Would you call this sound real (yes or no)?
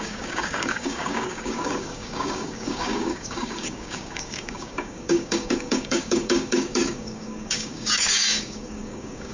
no